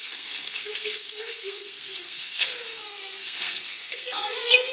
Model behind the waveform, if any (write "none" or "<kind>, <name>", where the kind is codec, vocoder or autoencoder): codec, SNAC